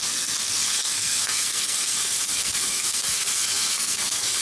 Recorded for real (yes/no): no